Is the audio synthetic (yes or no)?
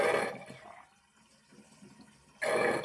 no